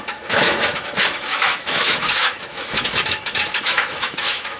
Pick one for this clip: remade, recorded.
remade